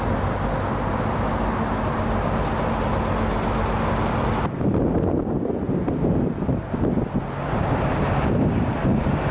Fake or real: real